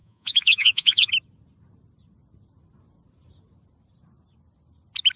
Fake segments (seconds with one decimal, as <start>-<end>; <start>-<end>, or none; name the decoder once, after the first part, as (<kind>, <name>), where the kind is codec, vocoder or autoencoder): 0.0-1.1 (vocoder, Vocos)

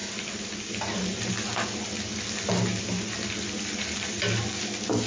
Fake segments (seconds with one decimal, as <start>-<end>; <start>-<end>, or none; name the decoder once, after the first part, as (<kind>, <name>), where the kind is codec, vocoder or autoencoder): none

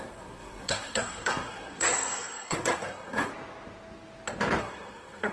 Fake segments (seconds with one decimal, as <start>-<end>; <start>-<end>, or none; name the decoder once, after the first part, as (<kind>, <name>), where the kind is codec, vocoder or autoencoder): 0.0-3.3 (codec, SNAC); 4.6-5.3